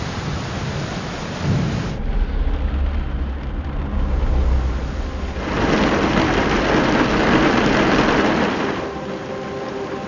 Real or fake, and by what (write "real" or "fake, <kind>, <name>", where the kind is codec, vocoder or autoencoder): real